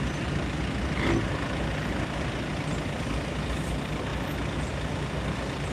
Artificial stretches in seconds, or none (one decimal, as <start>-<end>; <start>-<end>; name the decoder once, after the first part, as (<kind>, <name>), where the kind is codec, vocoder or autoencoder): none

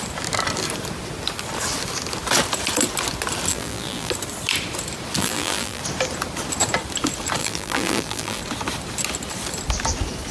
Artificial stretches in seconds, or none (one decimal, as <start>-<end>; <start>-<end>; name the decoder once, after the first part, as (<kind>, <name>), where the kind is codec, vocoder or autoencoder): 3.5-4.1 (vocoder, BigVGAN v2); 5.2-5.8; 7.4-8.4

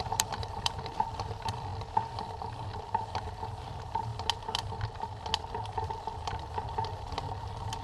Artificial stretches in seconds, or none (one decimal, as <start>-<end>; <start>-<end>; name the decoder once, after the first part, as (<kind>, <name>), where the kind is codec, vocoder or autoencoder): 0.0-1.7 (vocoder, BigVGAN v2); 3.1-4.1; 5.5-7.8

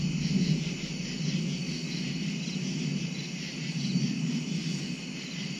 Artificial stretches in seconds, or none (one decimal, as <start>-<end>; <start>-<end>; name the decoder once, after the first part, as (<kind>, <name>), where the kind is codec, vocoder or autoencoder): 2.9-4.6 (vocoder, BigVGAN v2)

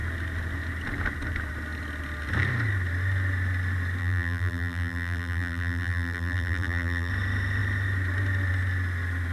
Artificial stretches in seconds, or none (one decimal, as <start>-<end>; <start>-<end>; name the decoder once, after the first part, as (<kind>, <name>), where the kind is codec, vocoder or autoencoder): 4.0-7.1 (vocoder, BigVGAN v2)

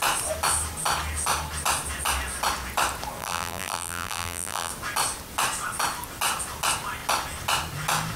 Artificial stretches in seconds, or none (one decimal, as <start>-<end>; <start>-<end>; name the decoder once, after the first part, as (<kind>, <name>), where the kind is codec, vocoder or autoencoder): 3.2-4.7 (vocoder, BigVGAN v2)

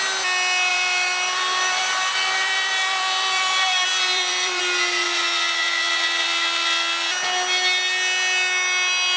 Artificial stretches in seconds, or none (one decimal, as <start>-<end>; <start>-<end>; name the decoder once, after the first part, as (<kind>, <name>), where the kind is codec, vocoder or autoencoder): 0.7-4.6 (vocoder, BigVGAN v2)

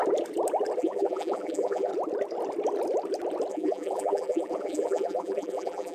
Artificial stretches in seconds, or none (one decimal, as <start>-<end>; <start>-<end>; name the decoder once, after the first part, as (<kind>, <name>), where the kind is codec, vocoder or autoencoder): 0.8-1.9 (vocoder, BigVGAN v2); 3.5-5.9